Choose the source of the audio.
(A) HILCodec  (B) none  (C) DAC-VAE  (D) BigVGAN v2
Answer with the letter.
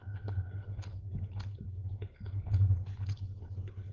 A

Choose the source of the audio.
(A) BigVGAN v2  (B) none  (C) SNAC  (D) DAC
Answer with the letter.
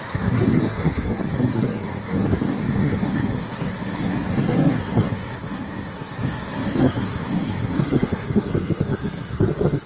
C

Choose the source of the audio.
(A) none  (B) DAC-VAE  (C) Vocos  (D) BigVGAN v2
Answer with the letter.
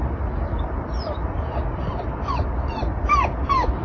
A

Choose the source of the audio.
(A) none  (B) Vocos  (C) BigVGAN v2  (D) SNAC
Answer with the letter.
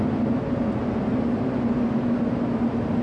A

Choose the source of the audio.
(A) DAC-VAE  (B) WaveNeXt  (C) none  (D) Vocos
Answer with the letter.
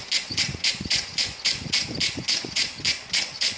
D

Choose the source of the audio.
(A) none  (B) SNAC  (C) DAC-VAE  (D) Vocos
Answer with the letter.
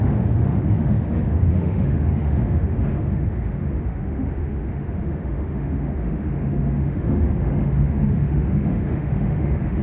C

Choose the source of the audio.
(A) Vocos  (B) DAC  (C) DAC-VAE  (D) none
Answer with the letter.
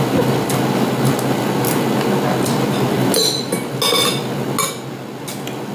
D